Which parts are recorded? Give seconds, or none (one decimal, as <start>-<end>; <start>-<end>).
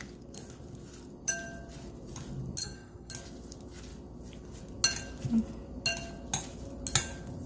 0.0-2.6; 3.1-7.5